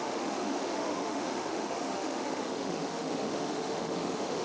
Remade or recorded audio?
remade